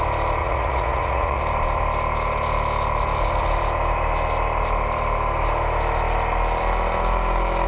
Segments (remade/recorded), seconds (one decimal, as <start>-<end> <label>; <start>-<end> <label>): 0.0-0.4 recorded; 0.4-1.4 remade; 1.4-7.7 recorded